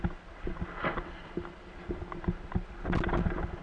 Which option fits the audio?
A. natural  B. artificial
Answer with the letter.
A